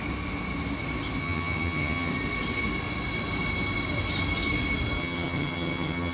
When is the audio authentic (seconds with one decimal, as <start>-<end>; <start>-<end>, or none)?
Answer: 0.0-1.2; 2.1-5.0